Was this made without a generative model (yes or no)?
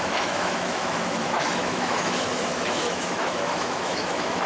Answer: no